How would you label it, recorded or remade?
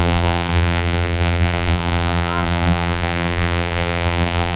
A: remade